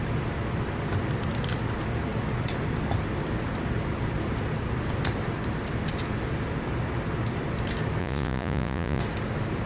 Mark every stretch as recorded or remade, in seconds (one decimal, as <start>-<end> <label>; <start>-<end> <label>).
0.0-8.0 recorded; 8.0-9.0 remade; 9.0-9.7 recorded